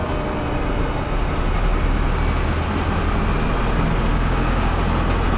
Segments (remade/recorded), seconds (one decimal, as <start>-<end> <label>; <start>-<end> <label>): 0.0-4.1 recorded; 4.1-4.8 remade; 4.8-5.4 recorded